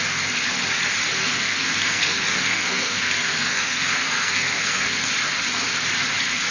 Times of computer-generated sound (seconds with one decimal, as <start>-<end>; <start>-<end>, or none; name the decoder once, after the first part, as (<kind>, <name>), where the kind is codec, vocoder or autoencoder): 1.2-5.1 (codec, SNAC)